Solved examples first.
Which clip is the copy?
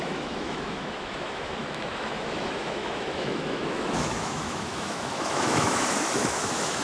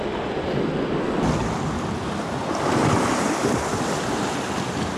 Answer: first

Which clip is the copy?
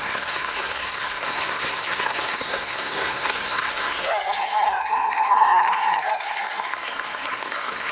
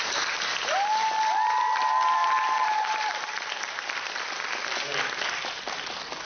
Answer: first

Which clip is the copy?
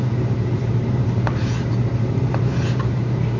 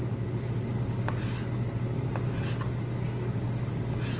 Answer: first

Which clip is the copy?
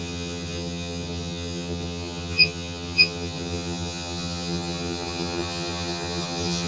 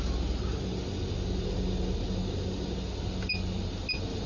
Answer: first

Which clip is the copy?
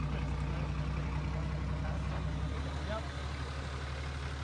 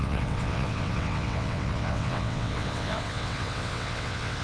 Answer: second